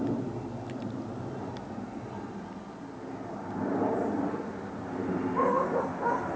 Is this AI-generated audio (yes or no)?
no